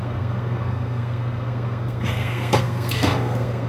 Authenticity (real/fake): fake